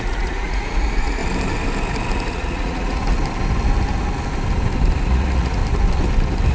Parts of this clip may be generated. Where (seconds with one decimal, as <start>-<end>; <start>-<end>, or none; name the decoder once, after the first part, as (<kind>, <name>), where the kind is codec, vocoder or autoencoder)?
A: 0.0-1.2 (vocoder, Vocos); 2.3-3.0; 5.1-5.6